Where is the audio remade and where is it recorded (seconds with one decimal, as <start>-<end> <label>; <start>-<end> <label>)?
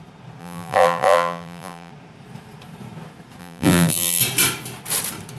0.0-0.4 recorded; 0.4-1.9 remade; 1.9-3.4 recorded; 3.4-4.2 remade; 4.2-5.4 recorded